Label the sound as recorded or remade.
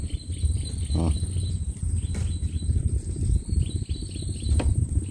recorded